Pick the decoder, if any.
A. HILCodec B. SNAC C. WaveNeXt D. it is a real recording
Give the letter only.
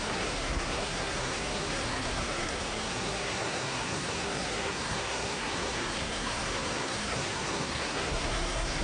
B